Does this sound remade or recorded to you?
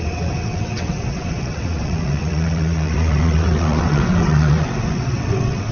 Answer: remade